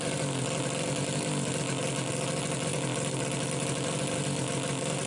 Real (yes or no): yes